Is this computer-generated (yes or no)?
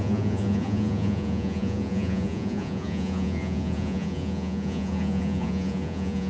yes